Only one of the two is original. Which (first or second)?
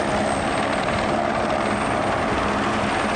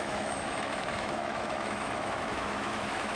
first